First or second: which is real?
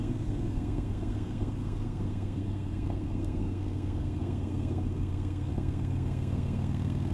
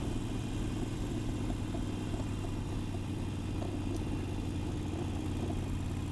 second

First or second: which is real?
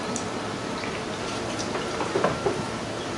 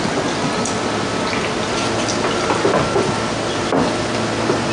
second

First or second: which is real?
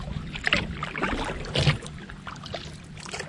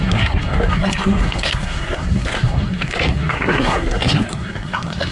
first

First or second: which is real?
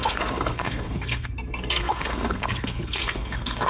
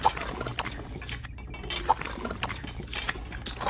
second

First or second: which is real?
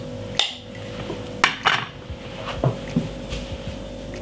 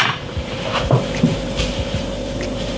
first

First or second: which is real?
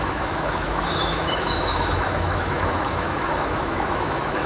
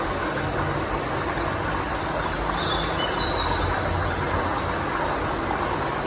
second